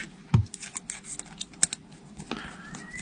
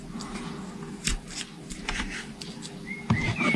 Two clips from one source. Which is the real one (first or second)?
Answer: first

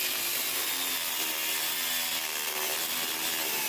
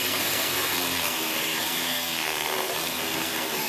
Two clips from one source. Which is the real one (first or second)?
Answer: first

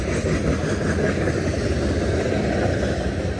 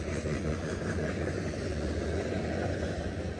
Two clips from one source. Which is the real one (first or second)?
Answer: first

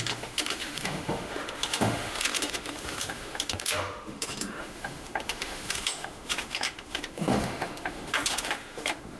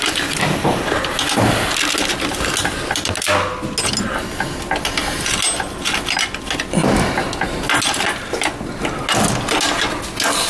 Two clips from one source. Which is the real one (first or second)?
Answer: second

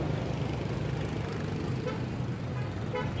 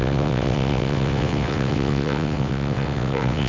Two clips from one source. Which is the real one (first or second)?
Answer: first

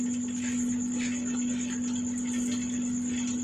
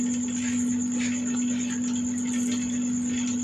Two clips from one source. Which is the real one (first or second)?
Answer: first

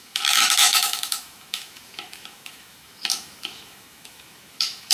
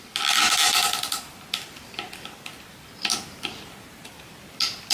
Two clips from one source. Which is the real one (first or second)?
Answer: second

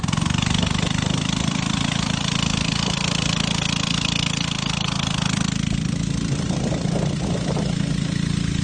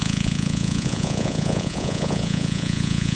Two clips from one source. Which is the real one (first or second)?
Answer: first